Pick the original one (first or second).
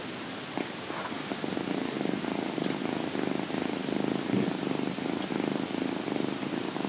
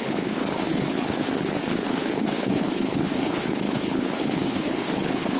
first